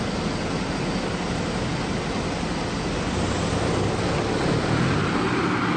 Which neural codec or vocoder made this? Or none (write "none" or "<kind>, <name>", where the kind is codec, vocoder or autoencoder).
none